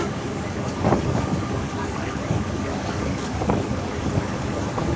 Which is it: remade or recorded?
remade